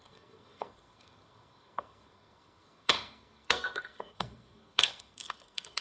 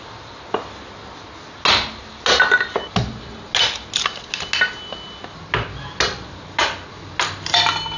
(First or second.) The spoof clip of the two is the first